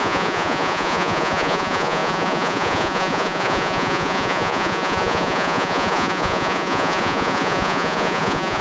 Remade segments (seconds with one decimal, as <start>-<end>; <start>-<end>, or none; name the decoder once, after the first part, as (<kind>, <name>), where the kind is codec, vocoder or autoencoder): 0.0-8.6 (vocoder, Vocos)